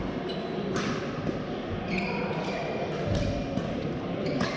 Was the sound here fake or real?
real